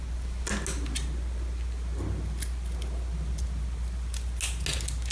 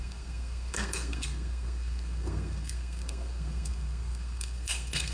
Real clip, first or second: first